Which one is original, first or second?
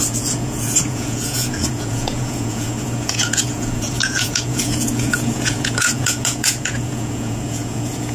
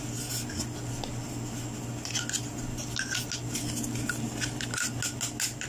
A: second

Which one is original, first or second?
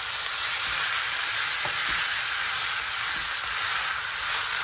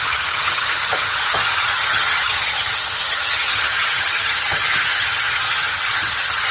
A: first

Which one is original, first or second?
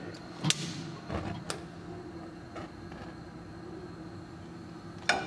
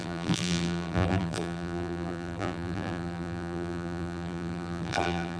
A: first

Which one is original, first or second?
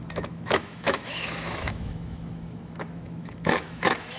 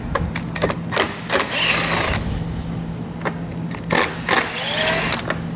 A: second